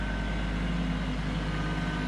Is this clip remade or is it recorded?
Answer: recorded